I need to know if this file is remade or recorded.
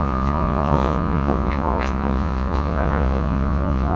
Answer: remade